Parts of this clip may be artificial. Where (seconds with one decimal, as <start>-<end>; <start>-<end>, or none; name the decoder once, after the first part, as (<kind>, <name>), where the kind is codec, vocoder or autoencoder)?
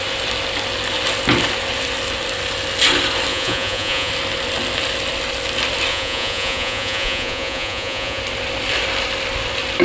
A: 3.3-4.1 (vocoder, Vocos); 5.9-8.2